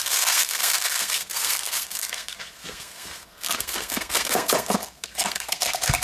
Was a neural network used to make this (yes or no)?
yes